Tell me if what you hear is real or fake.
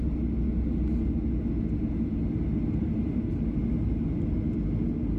real